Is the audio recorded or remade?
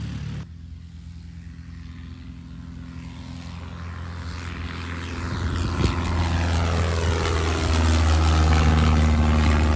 recorded